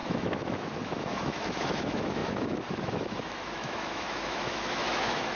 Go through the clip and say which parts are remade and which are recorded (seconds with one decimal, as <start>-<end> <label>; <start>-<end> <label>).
0.0-5.4 remade